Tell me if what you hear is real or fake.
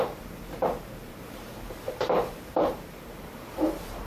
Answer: fake